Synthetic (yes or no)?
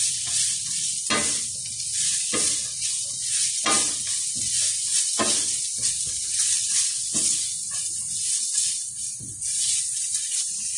no